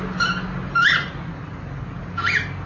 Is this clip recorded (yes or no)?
yes